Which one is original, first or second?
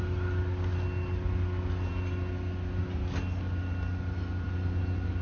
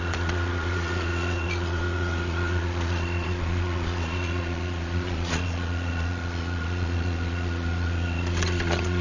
first